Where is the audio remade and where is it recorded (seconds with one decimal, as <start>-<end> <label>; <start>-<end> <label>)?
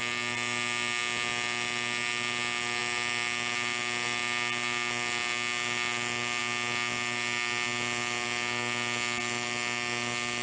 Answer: 0.0-10.4 recorded